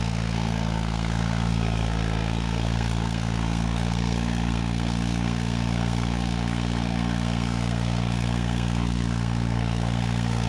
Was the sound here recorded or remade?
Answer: remade